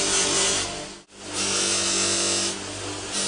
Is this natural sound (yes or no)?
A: yes